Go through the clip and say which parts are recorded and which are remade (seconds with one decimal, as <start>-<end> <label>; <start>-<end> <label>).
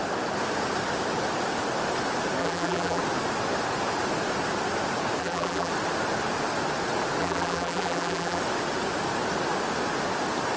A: 0.0-2.4 recorded; 2.4-3.0 remade; 3.0-5.2 recorded; 5.2-5.7 remade; 5.7-7.2 recorded; 7.2-8.4 remade; 8.4-10.6 recorded